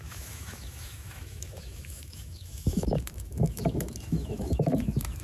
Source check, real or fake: fake